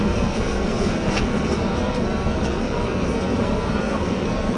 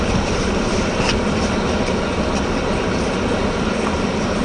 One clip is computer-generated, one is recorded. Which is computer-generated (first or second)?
first